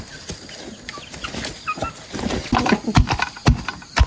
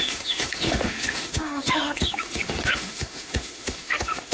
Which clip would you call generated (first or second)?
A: second